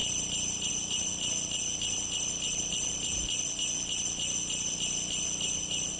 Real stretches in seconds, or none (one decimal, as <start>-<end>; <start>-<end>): 0.7-6.0